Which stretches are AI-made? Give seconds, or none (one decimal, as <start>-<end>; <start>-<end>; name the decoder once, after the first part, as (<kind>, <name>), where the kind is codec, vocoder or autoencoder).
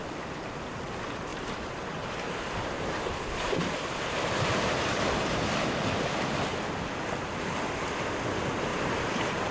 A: 1.3-5.5 (vocoder, BigVGAN v2); 8.7-9.5